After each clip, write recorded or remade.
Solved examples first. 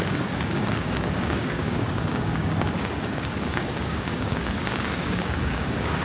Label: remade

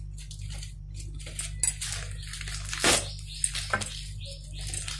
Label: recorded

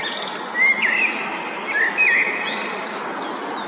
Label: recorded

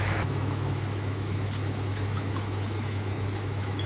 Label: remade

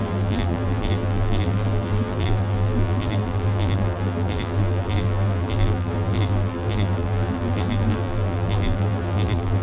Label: remade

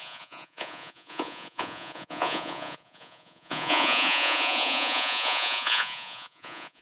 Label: remade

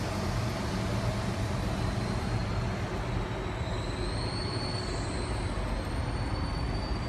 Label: recorded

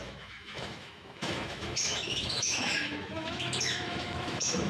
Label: remade